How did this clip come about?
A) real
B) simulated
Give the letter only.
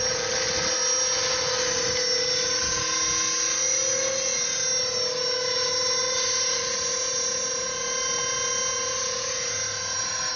A